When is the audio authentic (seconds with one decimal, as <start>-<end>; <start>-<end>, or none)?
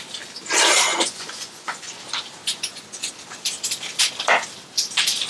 0.0-0.9; 2.0-2.4; 3.1-5.3